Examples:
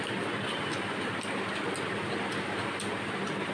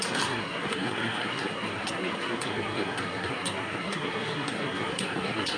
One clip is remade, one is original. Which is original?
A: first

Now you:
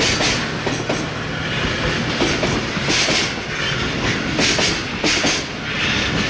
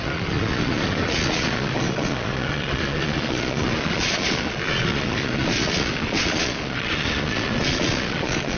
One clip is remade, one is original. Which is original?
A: first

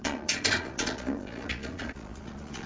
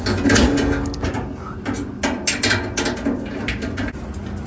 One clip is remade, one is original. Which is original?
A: second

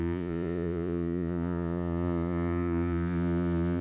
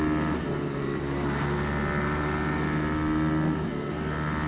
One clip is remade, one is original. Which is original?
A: second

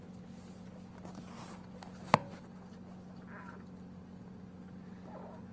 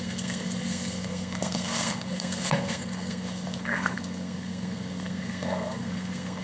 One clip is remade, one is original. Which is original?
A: first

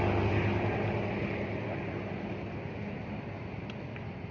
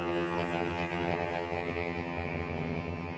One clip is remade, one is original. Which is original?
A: first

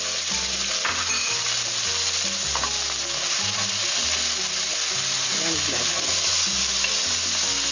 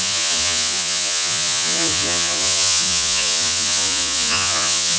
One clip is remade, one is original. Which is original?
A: first